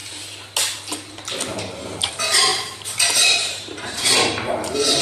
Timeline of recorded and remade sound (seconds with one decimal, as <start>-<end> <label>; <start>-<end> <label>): 0.0-2.5 recorded; 2.5-4.0 remade; 4.0-5.0 recorded